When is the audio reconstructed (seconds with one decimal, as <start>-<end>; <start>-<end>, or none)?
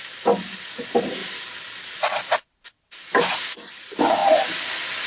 none